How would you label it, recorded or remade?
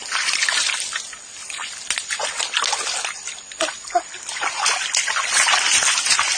recorded